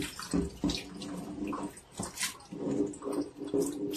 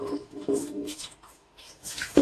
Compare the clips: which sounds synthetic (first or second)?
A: second